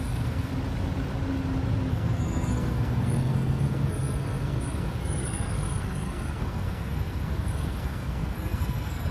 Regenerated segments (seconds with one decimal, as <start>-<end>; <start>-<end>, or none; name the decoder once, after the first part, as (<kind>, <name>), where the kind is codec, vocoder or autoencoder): 0.0-0.5 (codec, SNAC); 1.9-9.1